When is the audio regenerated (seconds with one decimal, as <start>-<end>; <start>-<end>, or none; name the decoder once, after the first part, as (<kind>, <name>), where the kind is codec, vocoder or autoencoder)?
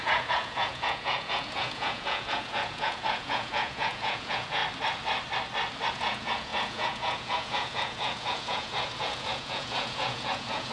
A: 0.0-4.6 (vocoder, Vocos); 5.9-10.7